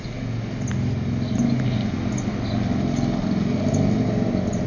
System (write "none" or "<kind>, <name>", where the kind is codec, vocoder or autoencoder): none